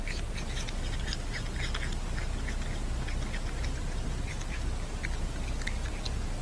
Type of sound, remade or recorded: recorded